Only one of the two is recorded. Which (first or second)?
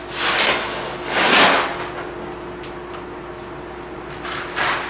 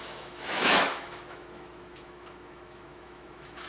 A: first